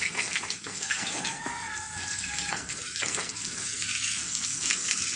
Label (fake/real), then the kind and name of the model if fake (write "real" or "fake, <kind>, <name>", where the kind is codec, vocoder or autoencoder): fake, codec, SNAC